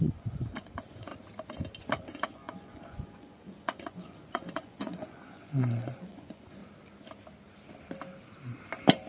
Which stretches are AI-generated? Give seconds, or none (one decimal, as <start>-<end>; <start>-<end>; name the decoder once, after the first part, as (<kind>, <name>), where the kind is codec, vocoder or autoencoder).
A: 0.0-1.1 (vocoder, Vocos); 1.8-6.6